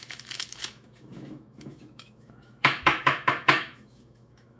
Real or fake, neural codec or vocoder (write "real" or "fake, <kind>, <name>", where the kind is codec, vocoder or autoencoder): fake, autoencoder, DAC-VAE